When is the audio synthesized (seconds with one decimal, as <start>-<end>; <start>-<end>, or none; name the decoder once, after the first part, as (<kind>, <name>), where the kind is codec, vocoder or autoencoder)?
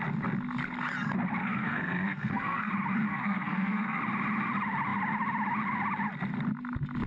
1.4-2.7 (codec, SNAC); 3.1-4.0